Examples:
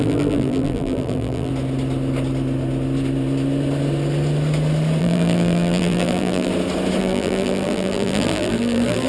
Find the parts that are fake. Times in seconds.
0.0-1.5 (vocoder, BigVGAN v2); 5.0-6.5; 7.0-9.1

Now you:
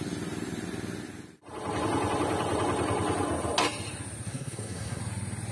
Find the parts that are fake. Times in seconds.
4.3-5.0 (codec, SNAC)

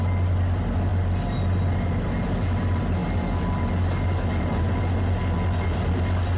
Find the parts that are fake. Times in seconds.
none